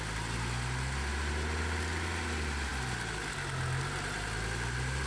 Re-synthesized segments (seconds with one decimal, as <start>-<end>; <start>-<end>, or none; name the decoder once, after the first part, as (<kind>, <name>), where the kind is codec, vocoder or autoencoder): none